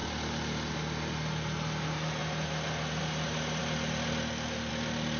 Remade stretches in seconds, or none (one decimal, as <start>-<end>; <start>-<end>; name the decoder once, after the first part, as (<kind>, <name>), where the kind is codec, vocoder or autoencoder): none